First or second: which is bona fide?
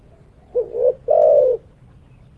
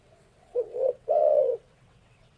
first